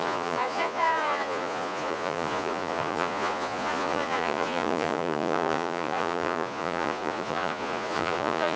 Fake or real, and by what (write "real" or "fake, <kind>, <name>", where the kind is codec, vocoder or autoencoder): fake, vocoder, Vocos